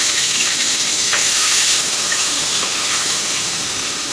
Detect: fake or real fake